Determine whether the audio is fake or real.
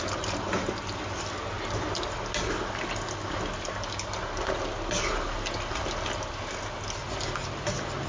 real